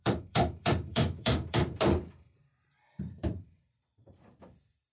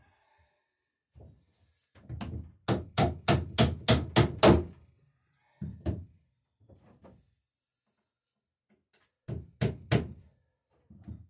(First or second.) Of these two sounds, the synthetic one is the first